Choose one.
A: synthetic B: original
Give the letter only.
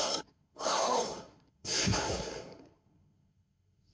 A